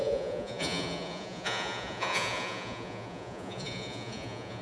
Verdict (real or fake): fake